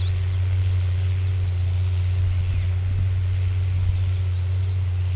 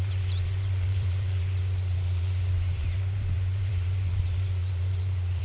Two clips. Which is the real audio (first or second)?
first